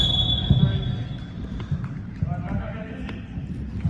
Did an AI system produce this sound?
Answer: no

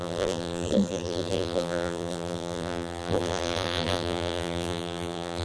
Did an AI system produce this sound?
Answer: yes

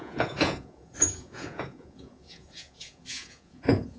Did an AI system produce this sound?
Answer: yes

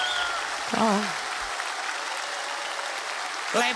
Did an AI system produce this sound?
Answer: no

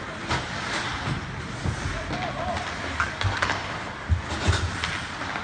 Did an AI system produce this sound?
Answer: no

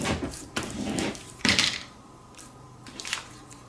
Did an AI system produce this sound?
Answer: yes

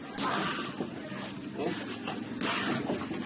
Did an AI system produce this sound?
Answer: no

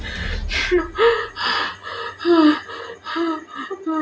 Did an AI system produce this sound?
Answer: no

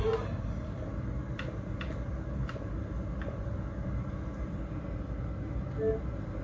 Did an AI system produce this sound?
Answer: no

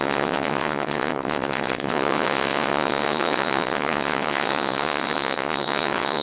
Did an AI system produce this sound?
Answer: yes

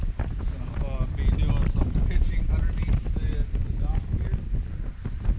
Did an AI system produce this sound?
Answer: no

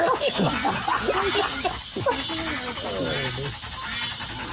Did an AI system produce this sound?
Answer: no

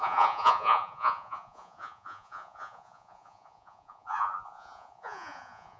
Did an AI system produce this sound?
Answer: yes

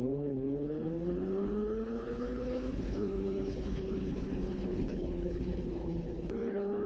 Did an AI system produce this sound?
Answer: yes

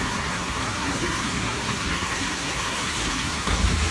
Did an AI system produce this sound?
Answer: yes